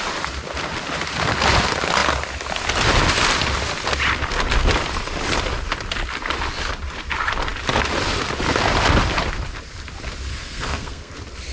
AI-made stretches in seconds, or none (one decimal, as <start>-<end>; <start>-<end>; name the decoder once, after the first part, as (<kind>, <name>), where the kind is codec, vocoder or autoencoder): 10.3-11.1 (codec, SNAC)